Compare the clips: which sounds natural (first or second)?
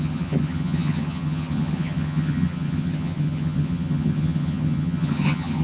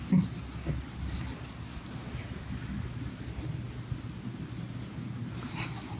second